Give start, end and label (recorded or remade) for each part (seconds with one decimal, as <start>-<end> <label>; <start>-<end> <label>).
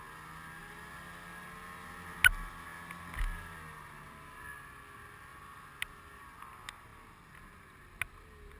0.0-8.6 recorded